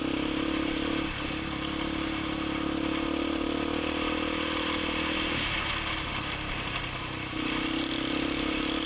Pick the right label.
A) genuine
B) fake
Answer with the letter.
A